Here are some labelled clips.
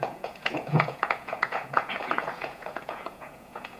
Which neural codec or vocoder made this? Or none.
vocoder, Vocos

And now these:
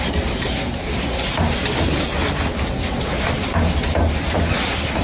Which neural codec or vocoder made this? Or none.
none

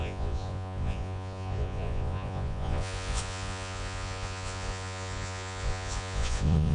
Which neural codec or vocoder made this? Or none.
vocoder, Vocos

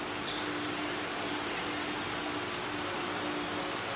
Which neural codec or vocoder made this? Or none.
none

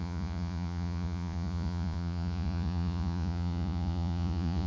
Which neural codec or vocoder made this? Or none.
vocoder, Vocos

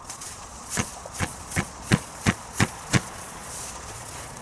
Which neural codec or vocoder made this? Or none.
vocoder, Vocos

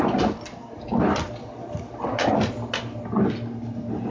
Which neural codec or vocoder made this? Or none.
none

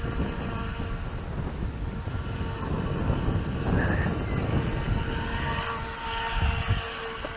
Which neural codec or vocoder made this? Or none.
none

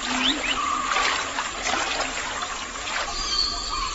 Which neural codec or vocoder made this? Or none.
none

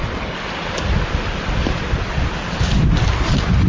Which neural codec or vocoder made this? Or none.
none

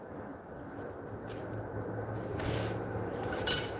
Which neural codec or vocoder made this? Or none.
none